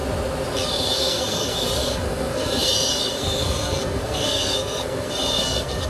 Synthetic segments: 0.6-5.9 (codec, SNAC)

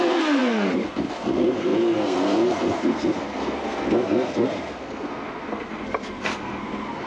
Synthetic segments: 0.0-7.1 (codec, SNAC)

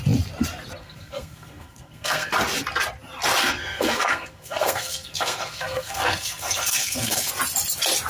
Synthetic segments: 0.8-2.3 (codec, SNAC); 3.4-7.3

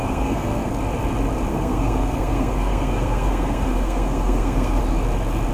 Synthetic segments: 0.0-0.7 (codec, SNAC); 1.5-4.8

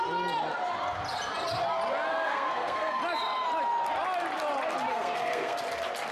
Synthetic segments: 2.1-3.0 (codec, SNAC); 4.9-5.6

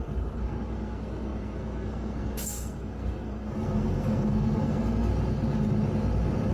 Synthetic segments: 0.0-5.1 (codec, SNAC)

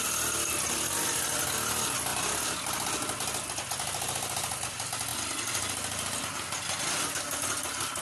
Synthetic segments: none